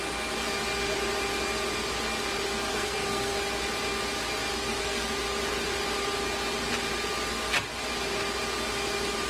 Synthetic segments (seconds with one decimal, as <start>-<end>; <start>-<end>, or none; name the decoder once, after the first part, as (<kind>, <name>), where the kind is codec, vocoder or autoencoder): 2.7-3.4 (codec, SNAC); 4.5-5.1

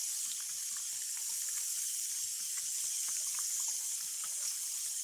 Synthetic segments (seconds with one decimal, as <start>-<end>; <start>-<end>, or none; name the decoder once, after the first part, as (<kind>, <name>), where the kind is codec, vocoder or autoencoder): 1.7-5.0 (vocoder, BigVGAN v2)

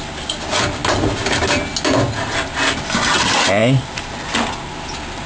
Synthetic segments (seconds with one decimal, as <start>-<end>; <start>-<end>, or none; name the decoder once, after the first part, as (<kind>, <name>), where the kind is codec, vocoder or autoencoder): none

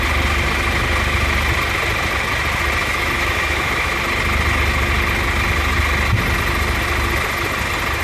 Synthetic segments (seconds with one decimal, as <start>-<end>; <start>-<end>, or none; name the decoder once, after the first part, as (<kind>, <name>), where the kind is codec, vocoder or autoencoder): 2.8-3.9 (autoencoder, DAC-VAE)

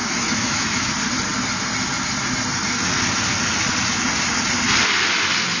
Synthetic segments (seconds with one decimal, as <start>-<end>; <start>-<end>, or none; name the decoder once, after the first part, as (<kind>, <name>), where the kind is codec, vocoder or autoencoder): 0.0-0.9 (autoencoder, DAC-VAE)

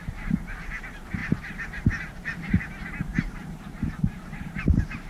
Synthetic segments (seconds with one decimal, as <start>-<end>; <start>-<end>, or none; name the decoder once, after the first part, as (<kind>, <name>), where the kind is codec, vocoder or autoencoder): 3.1-5.1 (vocoder, BigVGAN v2)